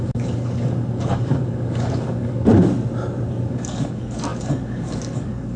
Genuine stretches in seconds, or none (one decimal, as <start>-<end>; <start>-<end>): 2.5-3.5